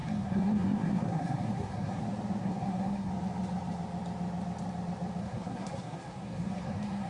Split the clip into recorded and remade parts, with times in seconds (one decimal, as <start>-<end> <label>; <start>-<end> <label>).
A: 0.0-2.0 remade; 2.0-2.4 recorded; 2.4-3.1 remade; 3.1-5.2 recorded; 5.2-7.1 remade